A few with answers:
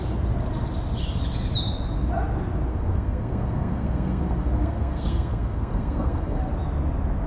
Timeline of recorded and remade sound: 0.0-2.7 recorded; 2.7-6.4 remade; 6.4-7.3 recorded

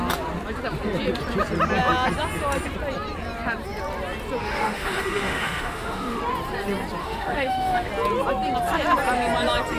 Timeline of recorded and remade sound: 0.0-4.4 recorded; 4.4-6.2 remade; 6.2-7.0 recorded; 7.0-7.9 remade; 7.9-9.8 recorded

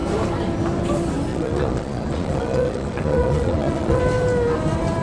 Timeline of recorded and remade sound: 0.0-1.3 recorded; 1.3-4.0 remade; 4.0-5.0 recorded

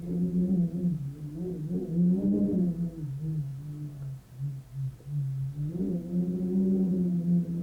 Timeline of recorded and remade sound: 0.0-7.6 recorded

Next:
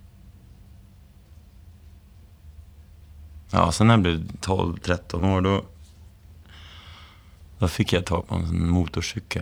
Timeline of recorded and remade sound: 0.0-5.2 recorded; 5.2-5.9 remade; 5.9-6.9 recorded; 6.9-8.2 remade; 8.2-9.4 recorded

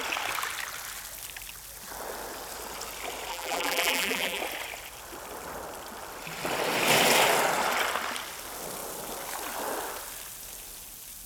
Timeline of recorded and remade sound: 0.0-3.3 recorded; 3.3-4.4 remade; 4.4-11.3 recorded

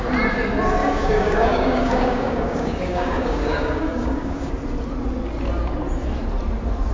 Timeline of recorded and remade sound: 0.0-0.8 recorded; 0.8-4.5 remade; 4.5-6.9 recorded